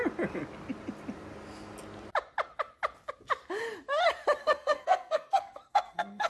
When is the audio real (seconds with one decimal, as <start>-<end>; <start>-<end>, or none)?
0.0-4.4